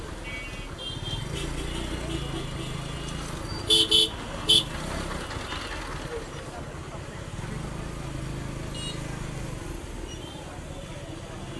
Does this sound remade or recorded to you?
recorded